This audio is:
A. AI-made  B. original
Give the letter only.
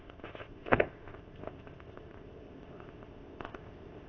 A